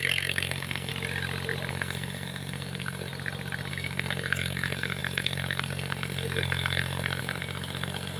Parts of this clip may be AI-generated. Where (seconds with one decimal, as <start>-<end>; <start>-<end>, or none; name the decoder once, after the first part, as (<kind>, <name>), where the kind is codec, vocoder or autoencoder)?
0.0-0.9 (codec, SNAC); 1.7-3.1; 3.7-8.2